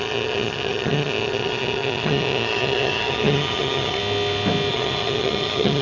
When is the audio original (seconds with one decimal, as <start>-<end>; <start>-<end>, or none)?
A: 4.0-4.7